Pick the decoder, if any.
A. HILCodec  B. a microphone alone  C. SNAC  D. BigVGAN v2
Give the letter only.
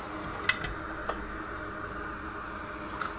B